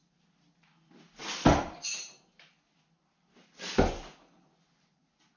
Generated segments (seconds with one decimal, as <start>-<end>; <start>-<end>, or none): 1.2-2.5